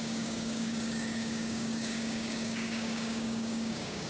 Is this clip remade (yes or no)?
yes